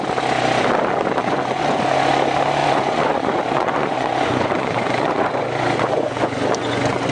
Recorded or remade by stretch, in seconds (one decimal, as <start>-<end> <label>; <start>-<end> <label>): 0.0-1.2 recorded; 1.2-2.1 remade; 2.1-2.6 recorded; 2.6-7.1 remade